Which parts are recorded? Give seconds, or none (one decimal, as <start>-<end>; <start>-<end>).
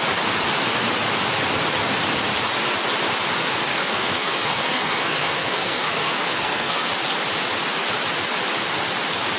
0.0-3.7; 6.9-9.4